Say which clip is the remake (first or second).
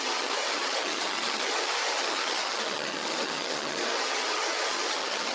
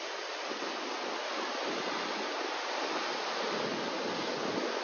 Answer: first